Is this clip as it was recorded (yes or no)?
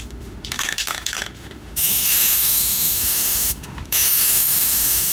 no